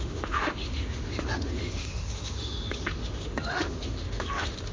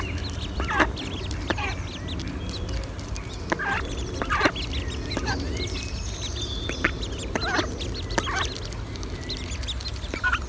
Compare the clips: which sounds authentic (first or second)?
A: second